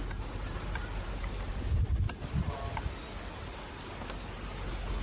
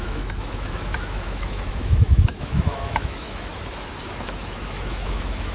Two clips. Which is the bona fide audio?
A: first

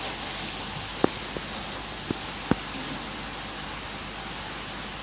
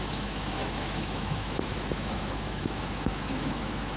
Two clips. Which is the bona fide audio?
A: first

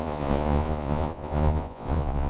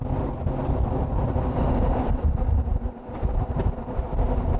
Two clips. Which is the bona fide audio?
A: second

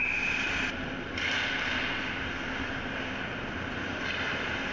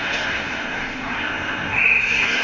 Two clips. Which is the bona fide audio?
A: first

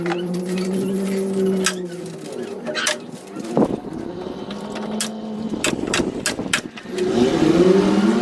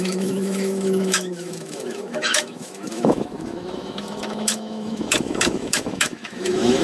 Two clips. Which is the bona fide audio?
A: first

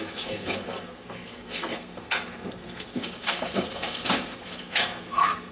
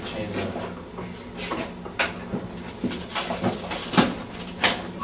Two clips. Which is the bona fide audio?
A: second